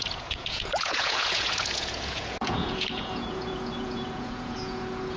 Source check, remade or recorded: remade